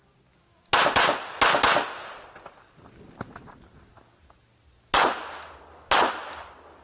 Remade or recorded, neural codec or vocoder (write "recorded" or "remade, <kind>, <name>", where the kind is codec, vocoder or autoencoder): recorded